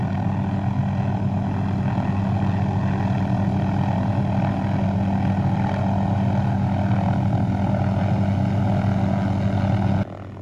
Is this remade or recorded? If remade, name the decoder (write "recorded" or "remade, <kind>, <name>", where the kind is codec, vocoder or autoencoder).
recorded